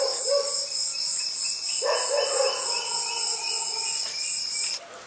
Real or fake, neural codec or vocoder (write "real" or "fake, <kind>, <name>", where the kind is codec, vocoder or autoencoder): real